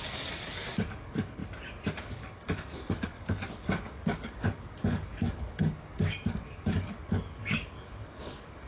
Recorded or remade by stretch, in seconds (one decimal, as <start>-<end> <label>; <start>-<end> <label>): 0.0-1.4 remade; 1.4-2.0 recorded; 2.0-8.7 remade